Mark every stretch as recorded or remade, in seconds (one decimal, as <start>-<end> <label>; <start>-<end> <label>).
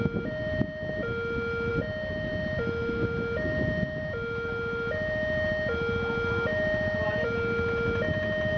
0.0-8.6 recorded